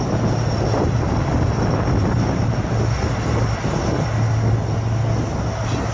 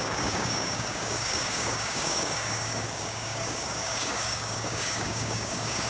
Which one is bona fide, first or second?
first